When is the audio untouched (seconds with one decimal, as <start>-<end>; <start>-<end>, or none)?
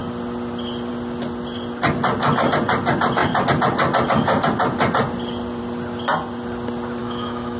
0.0-7.0